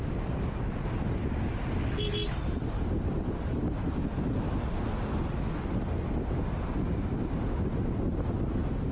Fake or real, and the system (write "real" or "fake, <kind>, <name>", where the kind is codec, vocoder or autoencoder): real